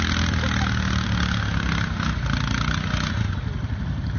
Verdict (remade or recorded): recorded